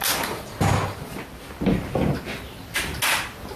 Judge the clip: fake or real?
real